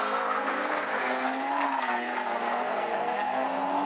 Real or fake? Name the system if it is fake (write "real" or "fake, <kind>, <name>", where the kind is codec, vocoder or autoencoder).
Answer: fake, codec, SNAC